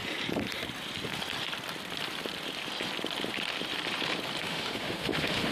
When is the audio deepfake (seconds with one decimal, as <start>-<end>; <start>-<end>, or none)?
4.4-5.5